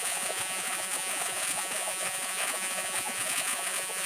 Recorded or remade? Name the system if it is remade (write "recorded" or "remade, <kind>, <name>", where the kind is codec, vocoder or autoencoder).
remade, vocoder, Vocos